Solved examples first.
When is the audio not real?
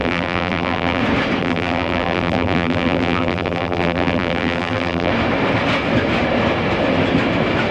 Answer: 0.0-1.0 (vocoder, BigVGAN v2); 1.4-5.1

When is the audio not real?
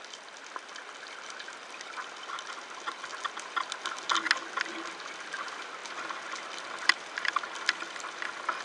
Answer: none